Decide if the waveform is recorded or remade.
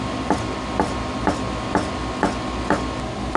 recorded